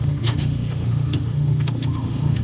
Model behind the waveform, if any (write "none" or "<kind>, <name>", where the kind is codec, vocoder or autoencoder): autoencoder, DAC-VAE